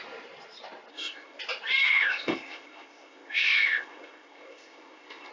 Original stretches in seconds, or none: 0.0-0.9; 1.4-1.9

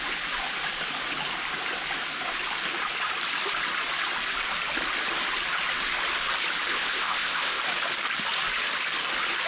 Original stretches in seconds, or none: 0.0-6.7; 7.6-9.5

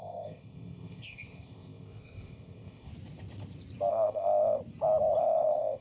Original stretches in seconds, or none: 2.9-3.9; 4.6-5.2

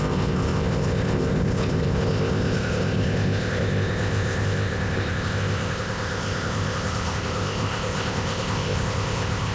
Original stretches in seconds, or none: none

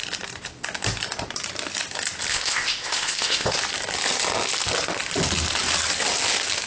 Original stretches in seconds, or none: 0.0-2.3; 3.5-6.7

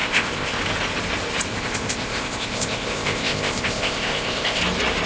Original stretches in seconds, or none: 0.6-1.5; 4.6-5.1

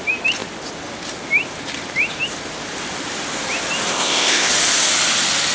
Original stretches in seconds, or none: 0.0-3.9; 4.5-5.5

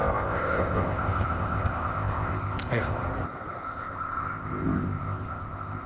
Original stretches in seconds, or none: 3.0-3.6